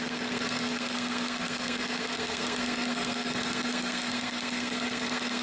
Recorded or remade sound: remade